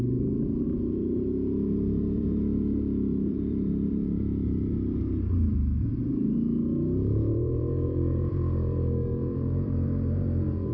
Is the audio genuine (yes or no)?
no